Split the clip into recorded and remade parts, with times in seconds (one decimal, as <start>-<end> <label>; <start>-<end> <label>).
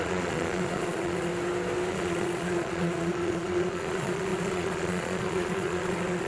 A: 0.0-1.3 remade; 1.3-1.9 recorded; 1.9-6.3 remade